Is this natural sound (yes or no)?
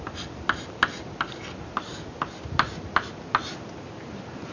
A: yes